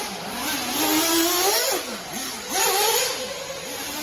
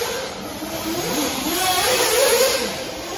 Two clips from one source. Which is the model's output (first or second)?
second